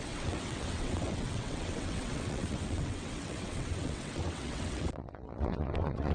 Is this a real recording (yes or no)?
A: no